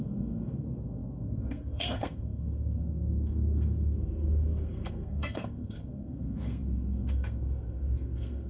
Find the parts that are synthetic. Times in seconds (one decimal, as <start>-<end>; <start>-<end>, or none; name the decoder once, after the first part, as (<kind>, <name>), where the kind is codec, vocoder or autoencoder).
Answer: 0.0-8.5 (codec, SNAC)